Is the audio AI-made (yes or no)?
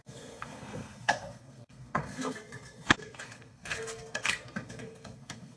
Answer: yes